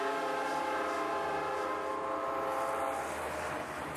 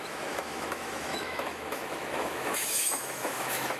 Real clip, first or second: first